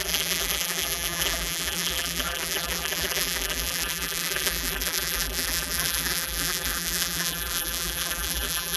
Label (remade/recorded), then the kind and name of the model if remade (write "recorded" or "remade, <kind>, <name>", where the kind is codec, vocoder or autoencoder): remade, vocoder, BigVGAN v2